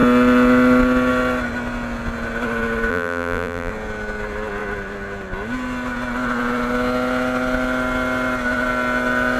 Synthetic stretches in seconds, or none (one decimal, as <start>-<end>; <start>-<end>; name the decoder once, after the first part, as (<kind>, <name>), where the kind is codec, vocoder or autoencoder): 2.9-3.7 (vocoder, BigVGAN v2)